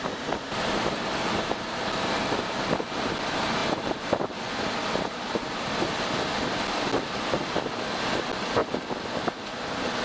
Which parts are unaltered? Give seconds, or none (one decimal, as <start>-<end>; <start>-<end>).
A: 0.0-10.0